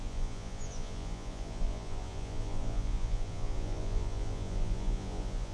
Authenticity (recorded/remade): remade